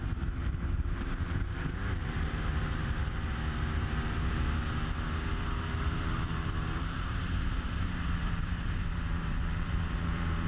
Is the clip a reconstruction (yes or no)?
yes